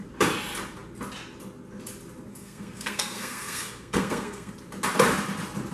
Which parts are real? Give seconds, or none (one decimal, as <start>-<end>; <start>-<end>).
0.0-2.3; 4.5-5.7